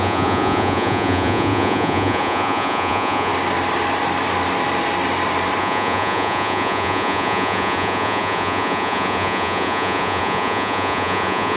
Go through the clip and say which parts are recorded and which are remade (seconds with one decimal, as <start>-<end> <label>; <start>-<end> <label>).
0.0-3.3 remade; 3.3-5.6 recorded; 5.6-11.6 remade